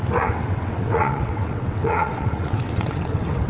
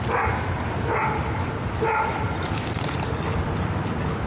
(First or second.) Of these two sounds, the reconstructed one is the first